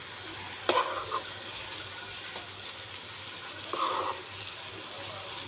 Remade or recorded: recorded